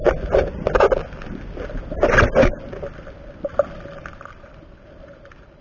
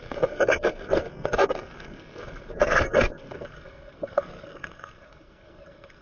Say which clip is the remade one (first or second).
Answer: second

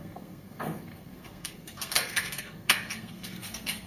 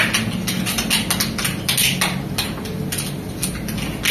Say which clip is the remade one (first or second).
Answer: first